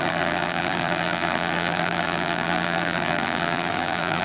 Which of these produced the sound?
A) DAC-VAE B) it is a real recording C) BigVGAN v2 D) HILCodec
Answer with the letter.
C